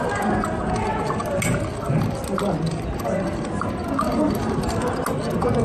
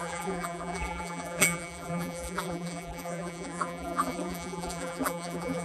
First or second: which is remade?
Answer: second